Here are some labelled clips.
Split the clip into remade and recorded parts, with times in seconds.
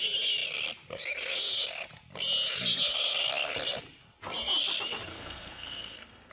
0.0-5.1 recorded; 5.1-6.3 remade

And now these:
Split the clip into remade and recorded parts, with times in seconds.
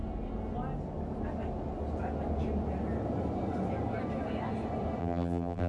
0.0-5.0 recorded; 5.0-5.7 remade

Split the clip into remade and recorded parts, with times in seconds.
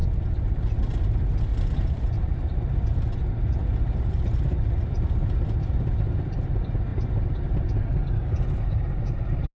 0.0-1.5 recorded; 1.5-6.4 remade; 6.4-6.9 recorded; 6.9-8.3 remade; 8.3-9.6 recorded